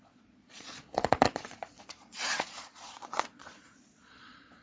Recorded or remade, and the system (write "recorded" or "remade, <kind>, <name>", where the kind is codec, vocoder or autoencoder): remade, vocoder, Vocos